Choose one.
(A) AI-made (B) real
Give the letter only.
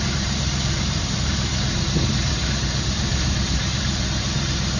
A